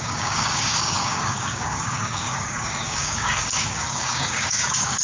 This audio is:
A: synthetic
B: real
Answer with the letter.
A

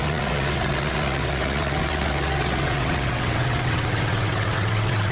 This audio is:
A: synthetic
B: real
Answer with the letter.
A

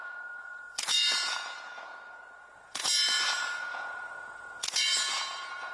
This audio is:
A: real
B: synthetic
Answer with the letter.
B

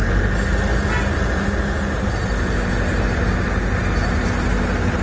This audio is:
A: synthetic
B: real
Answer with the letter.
B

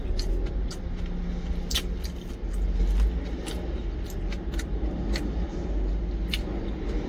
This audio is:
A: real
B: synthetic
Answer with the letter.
A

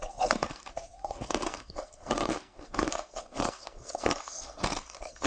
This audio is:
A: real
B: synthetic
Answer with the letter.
B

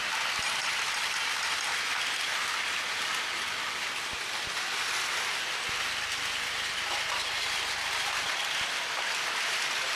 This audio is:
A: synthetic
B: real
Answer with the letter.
B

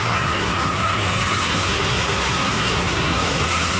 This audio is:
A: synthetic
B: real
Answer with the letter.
A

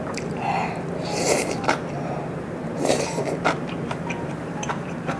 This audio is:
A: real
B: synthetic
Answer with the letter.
B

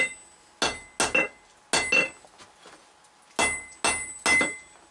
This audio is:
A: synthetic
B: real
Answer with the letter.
B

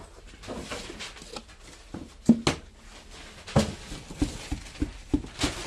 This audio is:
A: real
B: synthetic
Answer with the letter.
A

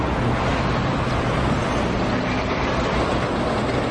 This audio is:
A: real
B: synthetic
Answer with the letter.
A